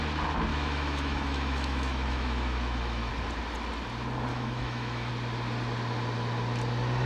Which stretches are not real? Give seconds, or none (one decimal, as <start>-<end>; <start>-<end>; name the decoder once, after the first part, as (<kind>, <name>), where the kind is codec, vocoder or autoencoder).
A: 0.5-3.1 (autoencoder, DAC-VAE); 4.3-5.1